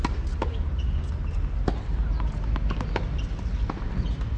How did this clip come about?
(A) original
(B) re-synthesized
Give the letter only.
A